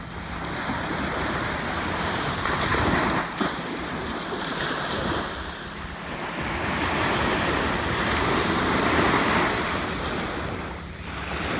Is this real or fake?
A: real